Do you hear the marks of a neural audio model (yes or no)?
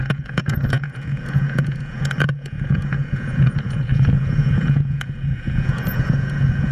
yes